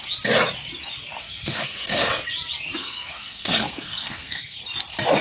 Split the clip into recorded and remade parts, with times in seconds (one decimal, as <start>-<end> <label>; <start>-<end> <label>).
0.0-1.2 recorded; 1.2-2.1 remade; 2.1-2.8 recorded; 2.8-4.6 remade; 4.6-5.2 recorded